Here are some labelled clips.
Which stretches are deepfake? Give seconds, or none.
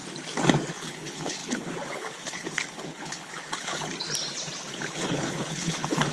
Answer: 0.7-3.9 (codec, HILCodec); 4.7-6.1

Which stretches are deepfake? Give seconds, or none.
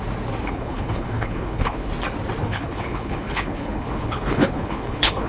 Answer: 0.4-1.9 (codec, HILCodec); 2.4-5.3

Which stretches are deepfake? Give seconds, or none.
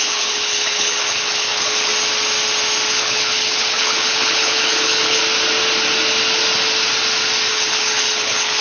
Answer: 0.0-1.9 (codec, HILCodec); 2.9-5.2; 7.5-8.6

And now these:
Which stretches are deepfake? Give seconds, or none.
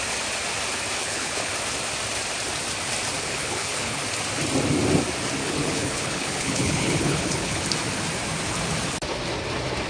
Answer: 1.0-1.5 (codec, HILCodec); 3.2-4.0; 5.4-7.6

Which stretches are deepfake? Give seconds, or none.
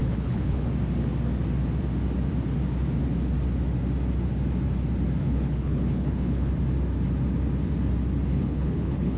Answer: 0.0-0.7 (codec, HILCodec); 5.2-6.5; 8.3-9.2